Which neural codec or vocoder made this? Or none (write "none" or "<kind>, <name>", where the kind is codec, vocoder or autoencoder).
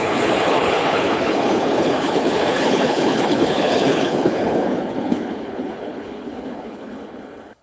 codec, HILCodec